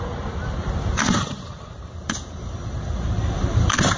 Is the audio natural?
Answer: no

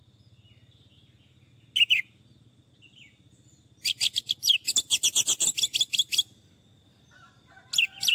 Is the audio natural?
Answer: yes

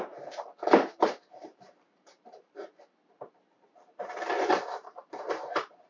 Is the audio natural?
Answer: no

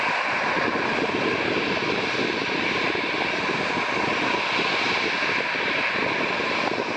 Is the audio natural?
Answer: yes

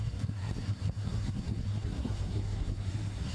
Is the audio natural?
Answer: no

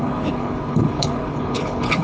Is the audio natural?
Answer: no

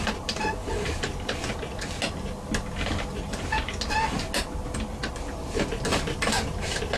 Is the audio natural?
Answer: yes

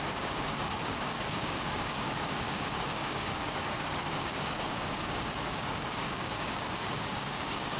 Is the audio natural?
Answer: no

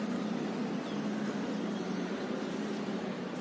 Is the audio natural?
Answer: yes